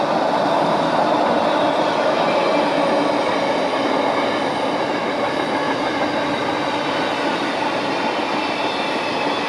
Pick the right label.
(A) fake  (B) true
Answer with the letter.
B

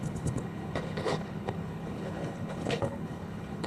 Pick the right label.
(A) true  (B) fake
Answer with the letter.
B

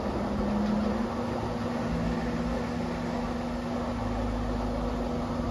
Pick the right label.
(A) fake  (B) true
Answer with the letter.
B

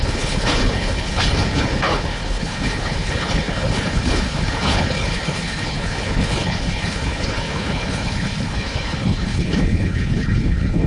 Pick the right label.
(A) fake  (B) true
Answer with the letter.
A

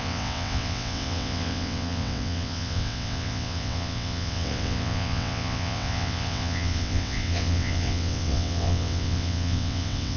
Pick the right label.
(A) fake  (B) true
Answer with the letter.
A